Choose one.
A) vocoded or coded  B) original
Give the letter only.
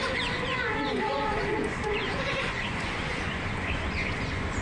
A